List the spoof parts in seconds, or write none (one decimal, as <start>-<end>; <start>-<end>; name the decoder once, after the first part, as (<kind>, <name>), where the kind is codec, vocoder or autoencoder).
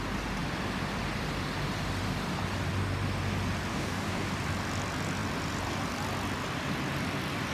3.7-4.3 (codec, DAC)